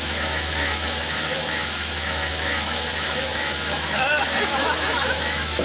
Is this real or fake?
fake